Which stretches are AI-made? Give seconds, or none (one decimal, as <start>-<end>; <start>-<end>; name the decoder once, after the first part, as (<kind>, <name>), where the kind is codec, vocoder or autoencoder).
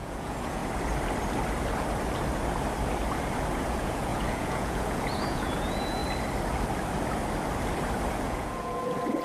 0.0-0.6 (vocoder, Vocos); 3.5-6.0; 8.2-9.2